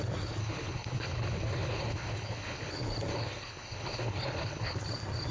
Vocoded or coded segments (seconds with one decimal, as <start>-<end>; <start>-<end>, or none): 0.4-2.7; 3.1-4.8